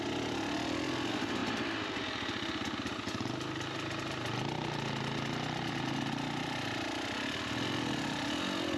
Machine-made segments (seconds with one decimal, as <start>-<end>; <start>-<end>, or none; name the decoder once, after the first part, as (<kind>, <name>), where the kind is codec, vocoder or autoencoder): 1.4-2.0 (vocoder, BigVGAN v2)